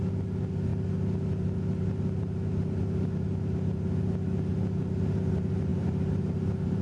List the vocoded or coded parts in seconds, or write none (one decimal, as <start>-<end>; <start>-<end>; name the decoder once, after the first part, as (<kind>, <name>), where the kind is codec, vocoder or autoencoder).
5.7-6.8 (vocoder, BigVGAN v2)